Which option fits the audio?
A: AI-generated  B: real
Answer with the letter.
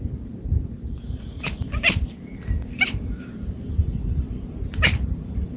A